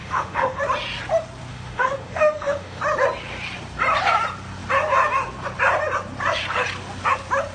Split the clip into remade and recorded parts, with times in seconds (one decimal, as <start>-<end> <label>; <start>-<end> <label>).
0.0-0.6 remade; 0.6-1.5 recorded; 1.5-2.8 remade; 2.8-7.5 recorded